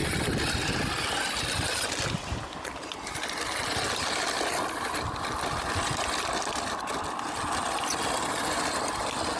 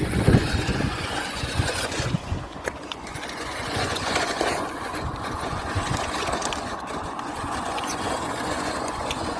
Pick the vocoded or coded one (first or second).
second